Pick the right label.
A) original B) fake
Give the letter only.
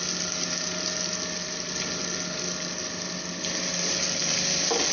A